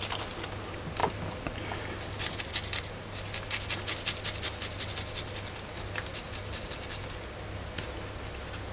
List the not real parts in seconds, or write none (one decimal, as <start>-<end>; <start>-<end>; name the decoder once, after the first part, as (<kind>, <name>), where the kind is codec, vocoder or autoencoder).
1.0-2.4 (vocoder, BigVGAN v2)